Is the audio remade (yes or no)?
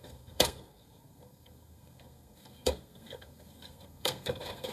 yes